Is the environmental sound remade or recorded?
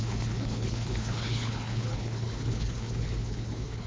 remade